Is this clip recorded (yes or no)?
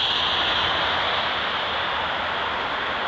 yes